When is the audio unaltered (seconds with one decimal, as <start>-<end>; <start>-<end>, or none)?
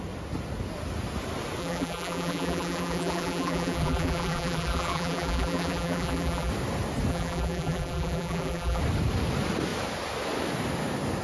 0.0-1.6; 6.5-7.1; 8.8-11.2